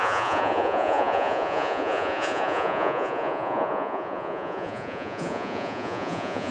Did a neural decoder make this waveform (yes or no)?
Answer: yes